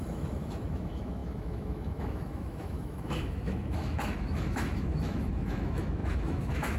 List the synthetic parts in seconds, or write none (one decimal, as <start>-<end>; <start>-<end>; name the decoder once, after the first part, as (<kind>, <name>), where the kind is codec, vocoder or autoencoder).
0.0-6.8 (autoencoder, DAC-VAE)